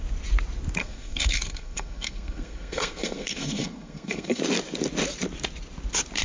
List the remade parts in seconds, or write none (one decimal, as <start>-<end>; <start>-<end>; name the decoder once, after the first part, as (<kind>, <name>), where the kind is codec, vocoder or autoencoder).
0.8-4.4 (codec, SNAC)